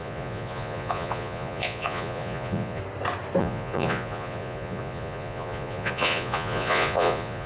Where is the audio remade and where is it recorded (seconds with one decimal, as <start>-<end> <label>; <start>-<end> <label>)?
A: 0.0-2.8 remade; 2.8-3.4 recorded; 3.4-7.5 remade